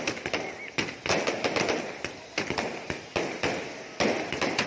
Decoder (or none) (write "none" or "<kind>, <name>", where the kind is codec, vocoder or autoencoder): none